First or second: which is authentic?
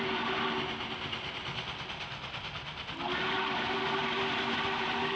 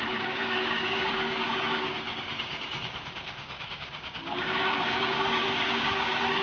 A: first